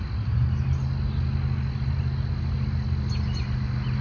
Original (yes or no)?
yes